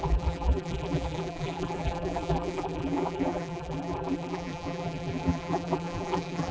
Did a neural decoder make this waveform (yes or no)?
yes